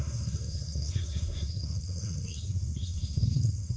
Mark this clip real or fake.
fake